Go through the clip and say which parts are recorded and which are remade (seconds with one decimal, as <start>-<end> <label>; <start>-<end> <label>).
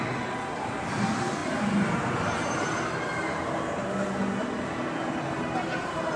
0.0-6.2 recorded